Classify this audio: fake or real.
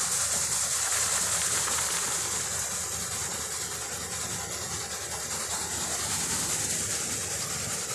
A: real